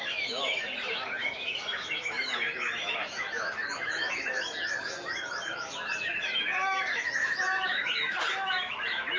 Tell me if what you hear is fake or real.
fake